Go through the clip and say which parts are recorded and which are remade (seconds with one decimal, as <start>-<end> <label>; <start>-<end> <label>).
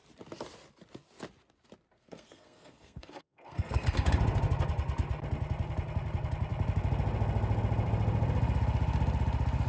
0.0-2.0 recorded; 2.0-4.1 remade; 4.1-9.7 recorded